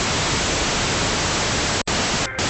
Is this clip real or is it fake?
real